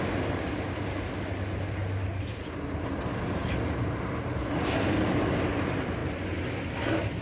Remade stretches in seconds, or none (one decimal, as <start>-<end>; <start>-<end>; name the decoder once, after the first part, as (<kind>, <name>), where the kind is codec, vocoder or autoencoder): none